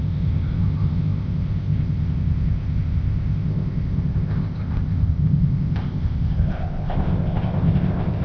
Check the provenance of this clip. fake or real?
fake